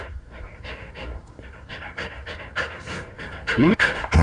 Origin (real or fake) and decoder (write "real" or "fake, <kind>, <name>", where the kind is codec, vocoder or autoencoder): fake, codec, SNAC